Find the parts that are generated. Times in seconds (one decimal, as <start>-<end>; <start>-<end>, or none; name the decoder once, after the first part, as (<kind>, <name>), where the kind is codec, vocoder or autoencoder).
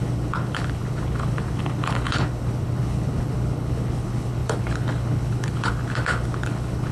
0.0-6.9 (codec, HILCodec)